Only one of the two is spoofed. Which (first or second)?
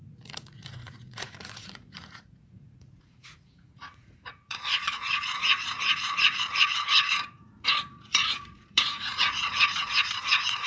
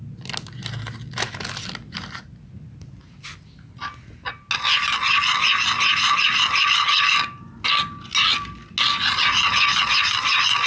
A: first